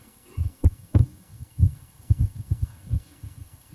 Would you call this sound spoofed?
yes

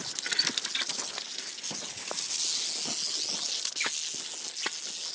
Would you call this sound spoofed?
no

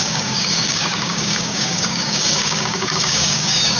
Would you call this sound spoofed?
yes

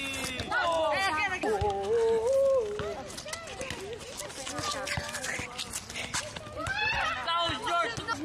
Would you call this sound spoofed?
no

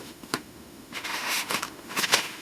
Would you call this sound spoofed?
yes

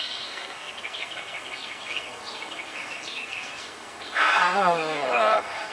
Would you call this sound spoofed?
yes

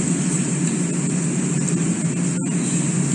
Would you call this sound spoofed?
no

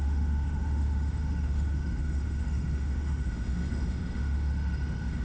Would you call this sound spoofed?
yes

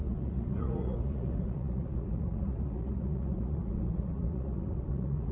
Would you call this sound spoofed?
yes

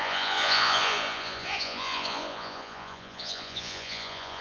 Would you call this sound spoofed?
yes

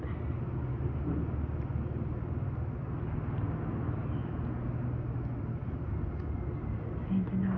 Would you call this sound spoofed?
no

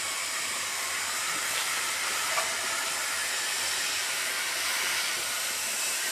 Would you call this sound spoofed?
yes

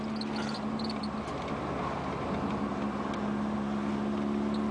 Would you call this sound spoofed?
no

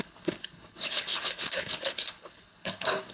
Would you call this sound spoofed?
yes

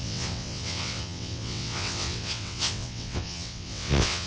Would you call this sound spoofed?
yes